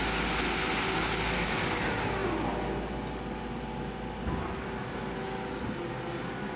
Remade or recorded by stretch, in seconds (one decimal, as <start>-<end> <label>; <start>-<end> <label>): 0.0-6.6 recorded